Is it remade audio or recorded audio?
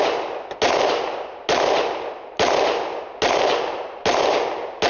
recorded